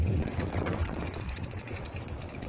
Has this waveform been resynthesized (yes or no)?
yes